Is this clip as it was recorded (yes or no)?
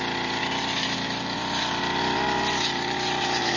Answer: yes